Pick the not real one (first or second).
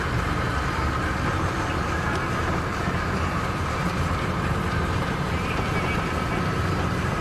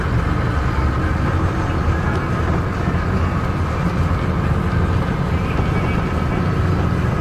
first